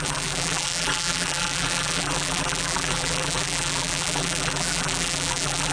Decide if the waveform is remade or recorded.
remade